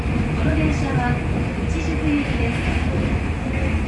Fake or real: real